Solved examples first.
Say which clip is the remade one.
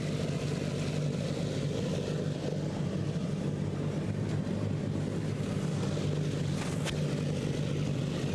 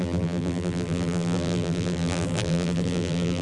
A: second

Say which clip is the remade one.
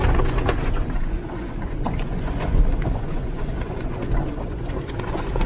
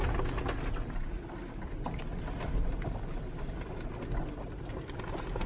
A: first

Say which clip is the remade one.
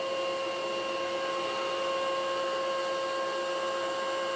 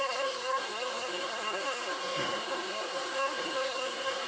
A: second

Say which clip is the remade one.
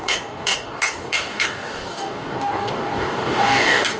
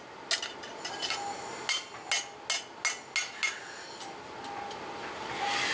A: first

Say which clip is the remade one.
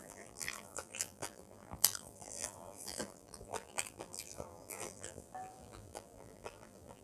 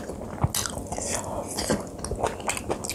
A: first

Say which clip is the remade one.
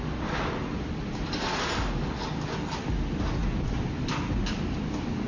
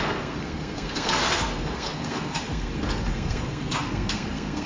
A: second